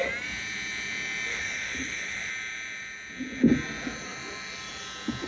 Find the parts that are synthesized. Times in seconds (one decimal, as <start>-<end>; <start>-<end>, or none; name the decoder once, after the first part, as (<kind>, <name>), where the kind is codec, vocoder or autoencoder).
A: 1.3-2.3 (codec, HILCodec)